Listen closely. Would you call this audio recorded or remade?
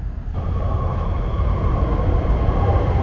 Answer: recorded